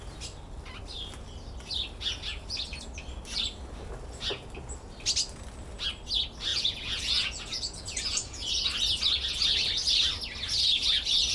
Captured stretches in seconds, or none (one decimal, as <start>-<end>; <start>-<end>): 0.0-6.5; 8.5-11.3